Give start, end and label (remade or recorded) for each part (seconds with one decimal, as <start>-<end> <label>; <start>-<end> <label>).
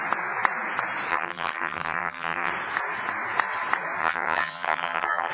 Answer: 0.0-1.1 recorded; 1.1-2.5 remade; 2.5-4.0 recorded; 4.0-5.3 remade